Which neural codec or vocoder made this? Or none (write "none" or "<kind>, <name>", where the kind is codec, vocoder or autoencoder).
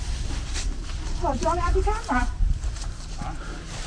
vocoder, BigVGAN v2